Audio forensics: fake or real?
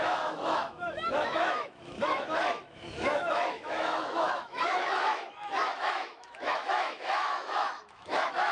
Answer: fake